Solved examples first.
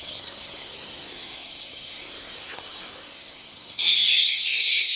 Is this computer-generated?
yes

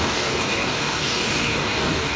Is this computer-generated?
yes